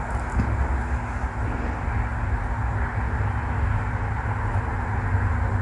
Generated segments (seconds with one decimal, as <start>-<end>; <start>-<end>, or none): none